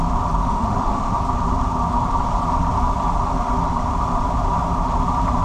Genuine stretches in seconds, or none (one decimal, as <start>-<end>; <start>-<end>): 0.0-0.4; 1.2-5.4